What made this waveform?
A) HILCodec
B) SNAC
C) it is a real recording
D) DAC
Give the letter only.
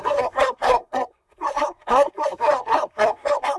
B